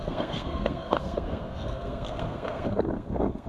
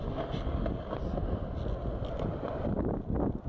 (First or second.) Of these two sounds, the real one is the second